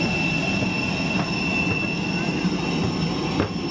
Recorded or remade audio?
recorded